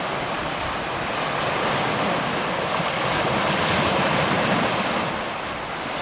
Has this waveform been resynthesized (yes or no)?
no